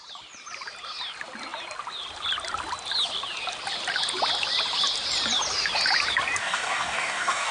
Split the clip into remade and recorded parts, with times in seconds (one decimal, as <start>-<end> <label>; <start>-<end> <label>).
0.0-6.4 recorded; 6.4-7.5 remade